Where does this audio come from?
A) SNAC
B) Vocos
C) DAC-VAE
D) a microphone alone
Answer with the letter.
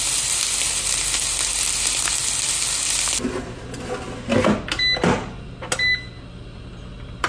D